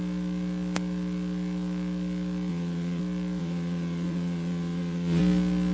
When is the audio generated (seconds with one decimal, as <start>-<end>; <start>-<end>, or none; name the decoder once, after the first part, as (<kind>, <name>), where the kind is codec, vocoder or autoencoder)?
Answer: 2.5-3.0 (vocoder, Vocos); 3.4-5.2